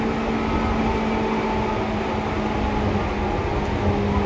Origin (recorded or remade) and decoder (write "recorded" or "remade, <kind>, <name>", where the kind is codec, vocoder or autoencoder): recorded